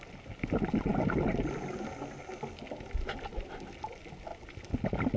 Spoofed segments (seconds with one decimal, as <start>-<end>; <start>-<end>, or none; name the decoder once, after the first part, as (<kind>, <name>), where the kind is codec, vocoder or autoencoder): none